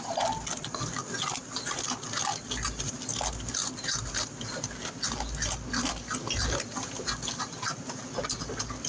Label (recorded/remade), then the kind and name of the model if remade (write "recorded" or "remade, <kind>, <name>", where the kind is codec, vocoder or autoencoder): recorded